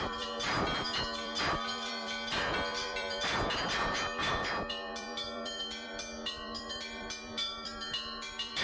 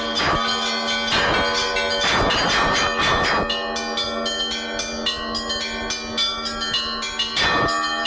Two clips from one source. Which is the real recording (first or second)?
second